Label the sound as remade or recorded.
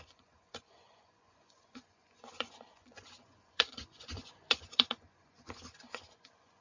remade